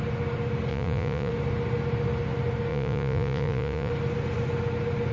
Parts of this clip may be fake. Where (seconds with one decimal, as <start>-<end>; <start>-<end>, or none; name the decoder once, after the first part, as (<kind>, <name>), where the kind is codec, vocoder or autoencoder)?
0.7-1.3 (vocoder, Vocos); 2.7-3.9